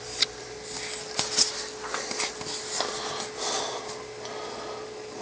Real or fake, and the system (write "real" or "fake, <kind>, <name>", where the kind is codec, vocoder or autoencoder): real